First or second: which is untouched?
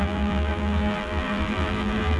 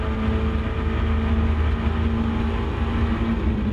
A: second